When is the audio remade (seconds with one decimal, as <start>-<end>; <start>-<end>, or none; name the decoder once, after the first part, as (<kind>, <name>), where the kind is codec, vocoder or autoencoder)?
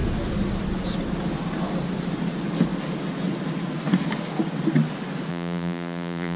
5.3-6.4 (vocoder, BigVGAN v2)